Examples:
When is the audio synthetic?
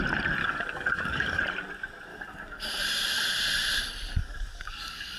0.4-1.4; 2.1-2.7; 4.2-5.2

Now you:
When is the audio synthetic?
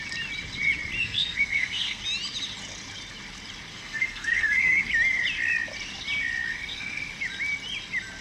1.0-2.0; 3.7-4.9; 6.5-7.1